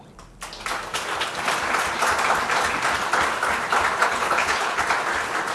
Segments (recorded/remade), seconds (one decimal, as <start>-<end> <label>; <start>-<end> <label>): 0.0-4.0 recorded; 4.0-4.8 remade; 4.8-5.5 recorded